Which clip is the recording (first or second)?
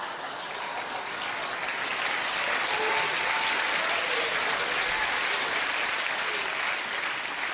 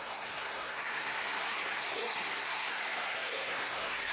first